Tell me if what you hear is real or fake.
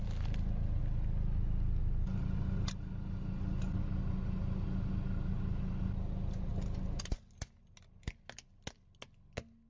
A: real